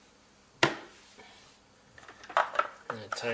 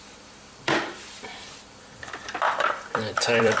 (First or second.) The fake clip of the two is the second